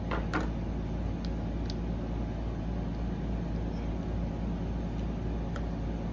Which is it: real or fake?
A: real